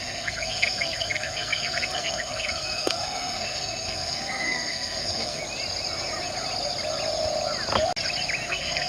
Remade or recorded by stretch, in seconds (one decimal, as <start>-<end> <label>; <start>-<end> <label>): 0.0-5.4 remade; 5.4-8.5 recorded; 8.5-8.9 remade